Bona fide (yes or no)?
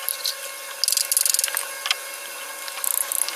yes